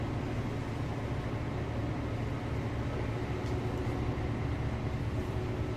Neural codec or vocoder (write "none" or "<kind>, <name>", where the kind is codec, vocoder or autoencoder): none